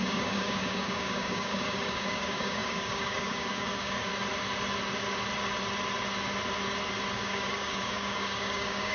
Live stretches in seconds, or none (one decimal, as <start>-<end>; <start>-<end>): 4.1-7.1